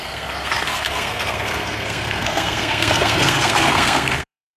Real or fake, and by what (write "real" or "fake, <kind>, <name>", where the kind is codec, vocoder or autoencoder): fake, codec, SNAC